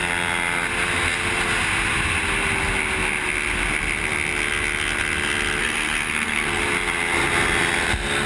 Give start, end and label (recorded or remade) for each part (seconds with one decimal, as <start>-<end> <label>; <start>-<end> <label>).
0.0-5.6 recorded; 5.6-6.6 remade; 6.6-8.3 recorded